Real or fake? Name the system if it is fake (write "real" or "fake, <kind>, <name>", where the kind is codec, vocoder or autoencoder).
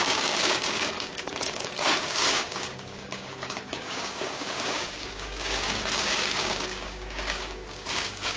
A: fake, codec, DAC